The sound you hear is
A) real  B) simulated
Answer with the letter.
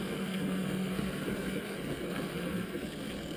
B